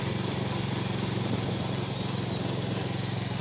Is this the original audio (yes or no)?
yes